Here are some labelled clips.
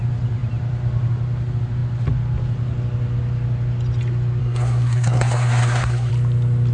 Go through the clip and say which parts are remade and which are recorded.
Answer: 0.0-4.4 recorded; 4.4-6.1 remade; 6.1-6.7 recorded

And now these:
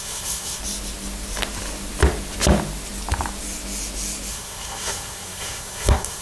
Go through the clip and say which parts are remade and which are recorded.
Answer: 0.0-0.6 remade; 0.6-4.3 recorded; 4.3-6.2 remade

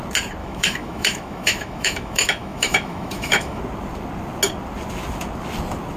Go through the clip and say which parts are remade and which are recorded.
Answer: 0.0-0.4 recorded; 0.4-3.6 remade; 3.6-6.0 recorded

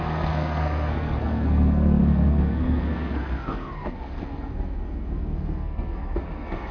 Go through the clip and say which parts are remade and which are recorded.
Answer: 0.0-6.7 remade

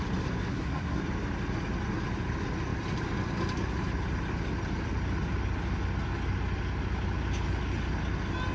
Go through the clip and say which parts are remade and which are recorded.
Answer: 0.0-0.5 recorded; 0.5-1.0 remade; 1.0-8.5 recorded

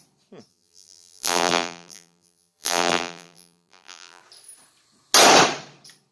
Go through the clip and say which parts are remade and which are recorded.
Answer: 0.0-0.5 recorded; 0.5-4.2 remade; 4.2-6.1 recorded

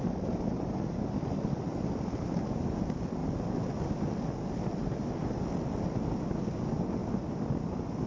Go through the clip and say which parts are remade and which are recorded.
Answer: 0.0-1.7 recorded; 1.7-2.4 remade; 2.4-8.1 recorded